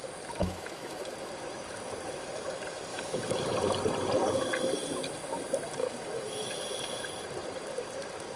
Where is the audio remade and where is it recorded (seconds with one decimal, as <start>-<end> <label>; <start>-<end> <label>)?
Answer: 0.0-0.4 recorded; 0.4-1.0 remade; 1.0-2.9 recorded; 2.9-3.4 remade; 3.4-5.8 recorded; 5.8-6.5 remade; 6.5-8.4 recorded